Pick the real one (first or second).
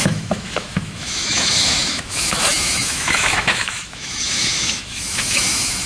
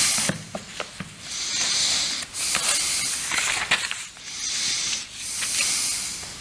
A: second